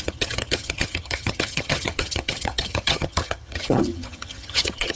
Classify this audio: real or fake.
fake